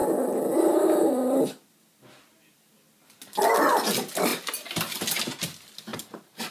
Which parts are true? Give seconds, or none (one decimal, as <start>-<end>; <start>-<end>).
0.0-5.9